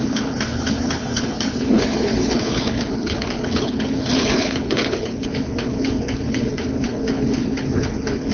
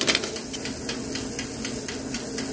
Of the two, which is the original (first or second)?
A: second